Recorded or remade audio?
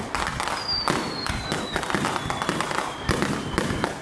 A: recorded